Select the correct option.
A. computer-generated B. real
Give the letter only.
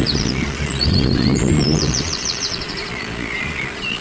A